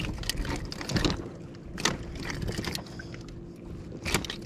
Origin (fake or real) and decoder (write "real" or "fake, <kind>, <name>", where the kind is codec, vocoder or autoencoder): real